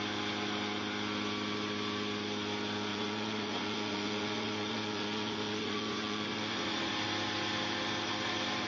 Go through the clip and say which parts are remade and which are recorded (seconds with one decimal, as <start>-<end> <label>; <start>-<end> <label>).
0.0-2.9 recorded; 2.9-6.9 remade; 6.9-8.7 recorded